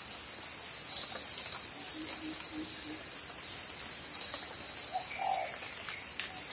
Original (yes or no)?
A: yes